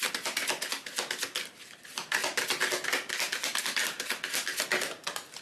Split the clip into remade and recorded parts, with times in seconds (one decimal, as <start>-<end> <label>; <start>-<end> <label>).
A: 0.0-2.2 recorded; 2.2-3.6 remade; 3.6-5.4 recorded